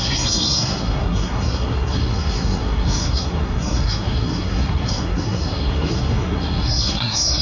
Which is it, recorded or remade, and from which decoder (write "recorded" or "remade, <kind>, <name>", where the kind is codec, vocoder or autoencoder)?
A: remade, codec, SNAC